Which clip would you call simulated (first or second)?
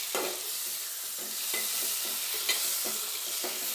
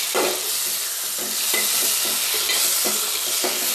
first